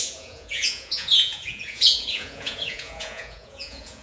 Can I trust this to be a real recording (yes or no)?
no